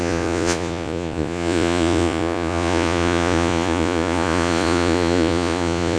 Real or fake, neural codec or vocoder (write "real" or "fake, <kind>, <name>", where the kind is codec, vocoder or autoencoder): fake, vocoder, Vocos